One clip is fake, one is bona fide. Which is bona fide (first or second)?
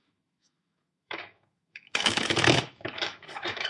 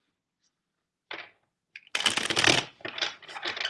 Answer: second